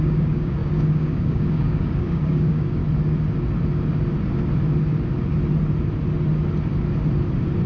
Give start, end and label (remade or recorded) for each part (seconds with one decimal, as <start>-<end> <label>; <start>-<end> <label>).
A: 0.0-2.8 remade; 2.8-7.7 recorded